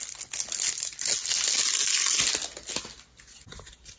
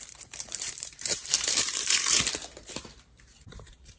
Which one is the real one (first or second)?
first